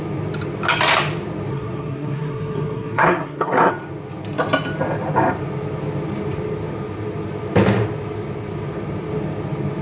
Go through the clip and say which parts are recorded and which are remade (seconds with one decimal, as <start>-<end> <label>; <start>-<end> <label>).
0.0-1.5 recorded; 1.5-3.7 remade; 3.7-9.8 recorded